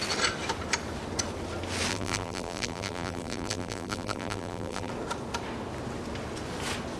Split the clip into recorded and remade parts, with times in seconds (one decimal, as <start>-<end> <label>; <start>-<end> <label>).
0.0-1.9 recorded; 1.9-4.9 remade; 4.9-7.0 recorded